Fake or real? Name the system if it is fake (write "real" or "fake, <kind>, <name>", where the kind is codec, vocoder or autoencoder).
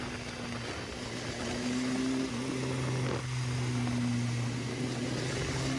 real